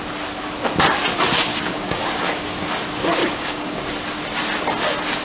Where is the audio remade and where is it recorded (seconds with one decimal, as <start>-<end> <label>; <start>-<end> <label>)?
0.0-1.5 recorded; 1.5-2.7 remade; 2.7-3.2 recorded; 3.2-3.9 remade; 3.9-5.2 recorded